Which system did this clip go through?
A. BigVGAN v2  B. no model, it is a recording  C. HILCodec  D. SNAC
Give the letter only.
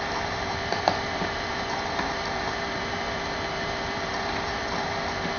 A